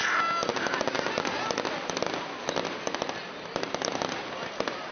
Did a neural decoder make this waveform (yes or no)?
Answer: no